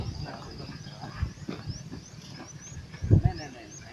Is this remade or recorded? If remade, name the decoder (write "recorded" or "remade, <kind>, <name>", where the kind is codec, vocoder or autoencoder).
recorded